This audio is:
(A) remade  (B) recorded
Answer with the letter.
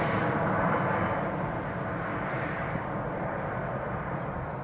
A